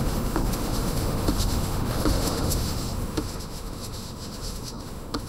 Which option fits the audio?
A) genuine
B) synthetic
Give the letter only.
B